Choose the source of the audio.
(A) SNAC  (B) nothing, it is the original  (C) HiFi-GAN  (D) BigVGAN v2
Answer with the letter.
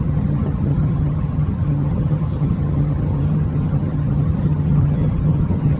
C